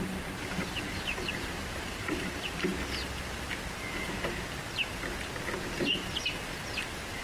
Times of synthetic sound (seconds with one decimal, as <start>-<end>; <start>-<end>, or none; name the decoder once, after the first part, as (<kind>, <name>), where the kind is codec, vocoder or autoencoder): 0.0-2.7 (vocoder, BigVGAN v2)